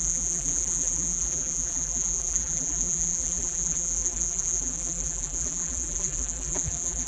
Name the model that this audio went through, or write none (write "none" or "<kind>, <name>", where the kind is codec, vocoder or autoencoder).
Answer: vocoder, BigVGAN v2